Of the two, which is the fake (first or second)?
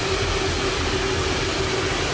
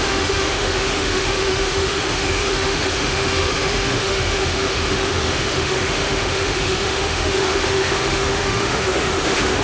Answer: second